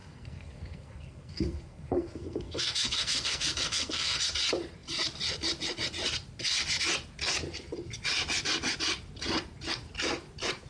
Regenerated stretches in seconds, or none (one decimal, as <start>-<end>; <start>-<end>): 0.0-4.2